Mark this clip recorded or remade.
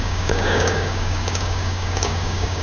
remade